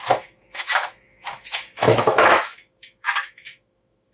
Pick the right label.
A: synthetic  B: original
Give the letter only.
A